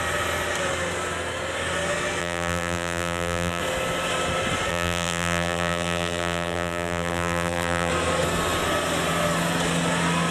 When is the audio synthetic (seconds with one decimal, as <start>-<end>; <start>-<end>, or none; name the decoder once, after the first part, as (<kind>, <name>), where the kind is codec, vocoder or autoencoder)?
2.2-3.6 (vocoder, BigVGAN v2); 4.7-7.9